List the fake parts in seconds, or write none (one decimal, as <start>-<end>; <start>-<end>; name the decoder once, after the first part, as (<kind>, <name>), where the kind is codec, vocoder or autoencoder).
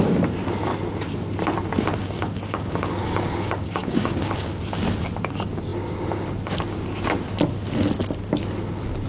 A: 2.0-4.5 (codec, DAC)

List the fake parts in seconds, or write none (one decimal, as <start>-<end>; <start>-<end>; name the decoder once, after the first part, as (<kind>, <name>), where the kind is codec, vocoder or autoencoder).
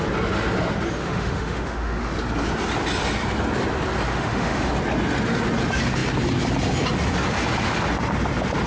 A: 1.0-2.1 (autoencoder, DAC-VAE); 4.1-4.7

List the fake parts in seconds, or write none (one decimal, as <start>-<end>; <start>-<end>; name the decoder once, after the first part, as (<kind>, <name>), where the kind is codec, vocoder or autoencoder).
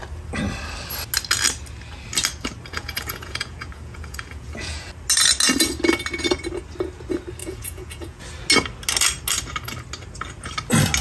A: 2.7-4.9 (vocoder, Vocos); 7.4-8.2